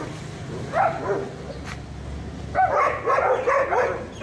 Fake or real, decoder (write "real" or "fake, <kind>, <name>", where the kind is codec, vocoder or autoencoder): real